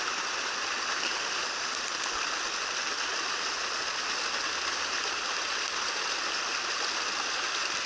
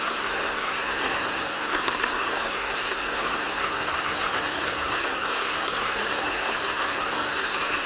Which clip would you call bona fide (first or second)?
first